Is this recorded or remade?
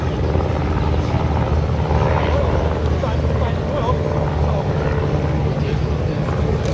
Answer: recorded